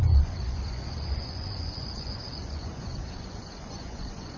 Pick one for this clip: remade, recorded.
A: remade